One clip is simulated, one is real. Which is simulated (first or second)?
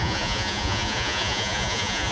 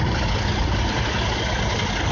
first